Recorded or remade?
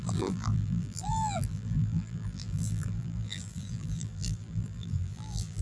remade